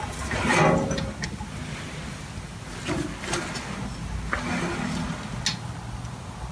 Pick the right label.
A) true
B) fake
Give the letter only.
A